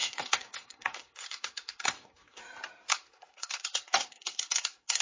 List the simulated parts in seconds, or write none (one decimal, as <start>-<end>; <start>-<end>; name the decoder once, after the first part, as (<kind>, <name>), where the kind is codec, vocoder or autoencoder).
0.0-2.4 (codec, SNAC); 2.9-5.0